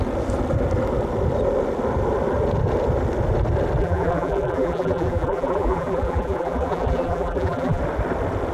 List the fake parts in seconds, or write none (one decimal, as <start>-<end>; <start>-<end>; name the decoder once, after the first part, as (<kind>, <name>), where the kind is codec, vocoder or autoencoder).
3.8-7.8 (vocoder, BigVGAN v2)